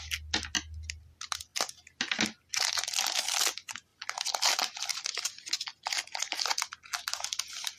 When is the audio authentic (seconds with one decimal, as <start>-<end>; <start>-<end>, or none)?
0.0-7.8